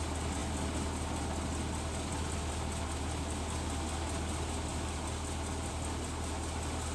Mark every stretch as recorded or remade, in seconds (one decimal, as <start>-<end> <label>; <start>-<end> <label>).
0.0-6.9 recorded